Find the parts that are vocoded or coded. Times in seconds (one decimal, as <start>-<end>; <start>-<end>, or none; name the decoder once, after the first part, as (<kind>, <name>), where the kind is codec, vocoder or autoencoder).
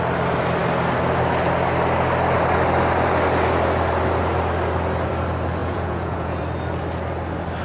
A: 5.6-6.4 (vocoder, Vocos)